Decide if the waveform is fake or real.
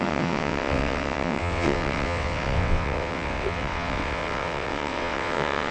fake